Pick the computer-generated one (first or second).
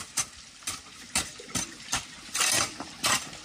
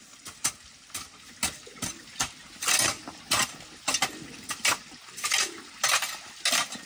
first